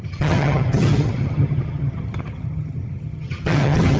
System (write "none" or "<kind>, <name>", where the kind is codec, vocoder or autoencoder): vocoder, HiFi-GAN